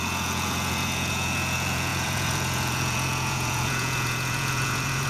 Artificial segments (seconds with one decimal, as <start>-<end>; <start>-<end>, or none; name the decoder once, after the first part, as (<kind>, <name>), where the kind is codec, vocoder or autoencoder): 0.0-5.1 (vocoder, Vocos)

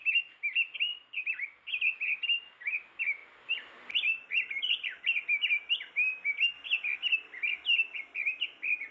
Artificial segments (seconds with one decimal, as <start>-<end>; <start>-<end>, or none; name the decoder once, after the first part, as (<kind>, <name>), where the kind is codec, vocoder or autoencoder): none

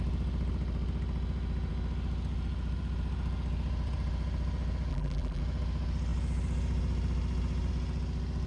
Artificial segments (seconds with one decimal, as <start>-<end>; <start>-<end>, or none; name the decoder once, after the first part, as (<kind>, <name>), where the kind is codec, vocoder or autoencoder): 4.9-5.4 (vocoder, BigVGAN v2)

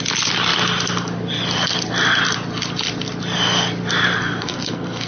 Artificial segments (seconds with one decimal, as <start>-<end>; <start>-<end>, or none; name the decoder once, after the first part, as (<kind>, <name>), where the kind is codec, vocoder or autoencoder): 4.2-5.1 (codec, SNAC)